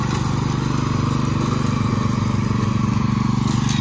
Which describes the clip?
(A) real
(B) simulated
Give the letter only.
A